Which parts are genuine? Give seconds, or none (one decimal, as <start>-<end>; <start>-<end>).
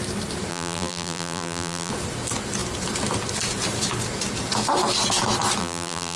0.0-0.5; 1.9-5.6